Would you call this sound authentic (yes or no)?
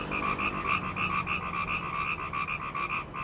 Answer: yes